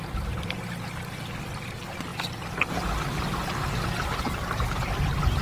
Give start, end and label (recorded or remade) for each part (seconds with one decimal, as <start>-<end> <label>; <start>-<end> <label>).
0.0-5.4 recorded